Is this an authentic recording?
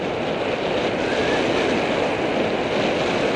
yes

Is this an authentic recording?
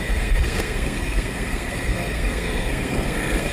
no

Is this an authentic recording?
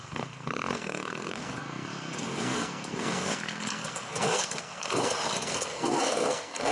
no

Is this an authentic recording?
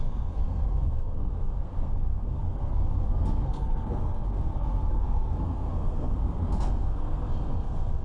no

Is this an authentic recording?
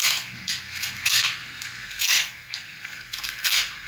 no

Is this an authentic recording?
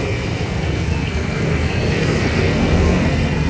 no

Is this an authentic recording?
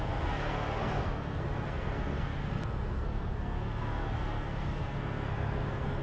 no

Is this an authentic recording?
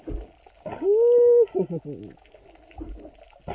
yes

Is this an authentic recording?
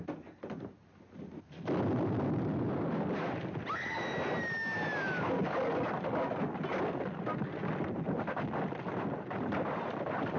yes